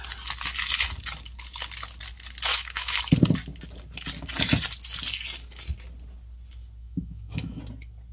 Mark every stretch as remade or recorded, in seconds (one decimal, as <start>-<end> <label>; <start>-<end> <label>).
0.0-2.5 recorded; 2.5-3.0 remade; 3.0-6.8 recorded; 6.8-7.6 remade; 7.6-8.1 recorded